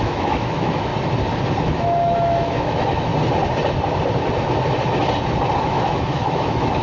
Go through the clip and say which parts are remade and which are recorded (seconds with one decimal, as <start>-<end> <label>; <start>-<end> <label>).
0.0-0.9 remade; 0.9-1.6 recorded; 1.6-3.1 remade; 3.1-5.6 recorded; 5.6-6.8 remade